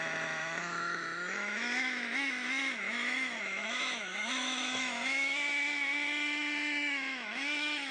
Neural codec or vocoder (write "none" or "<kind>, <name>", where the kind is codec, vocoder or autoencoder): autoencoder, DAC-VAE